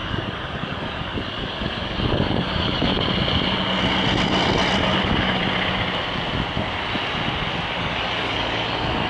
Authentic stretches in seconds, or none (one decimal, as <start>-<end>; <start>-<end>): 2.9-5.0; 5.4-7.8